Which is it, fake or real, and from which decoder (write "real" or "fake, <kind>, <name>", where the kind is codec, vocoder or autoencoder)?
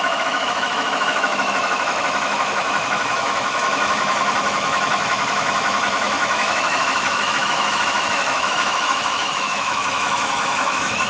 fake, autoencoder, DAC-VAE